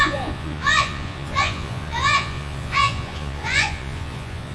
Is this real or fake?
fake